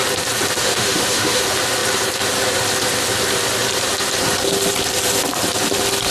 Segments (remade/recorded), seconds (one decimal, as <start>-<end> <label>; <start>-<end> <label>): 0.0-0.6 recorded; 0.6-1.4 remade; 1.4-6.1 recorded